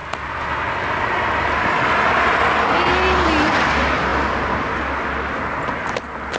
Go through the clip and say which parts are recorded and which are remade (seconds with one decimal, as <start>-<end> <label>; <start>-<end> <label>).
0.0-6.4 recorded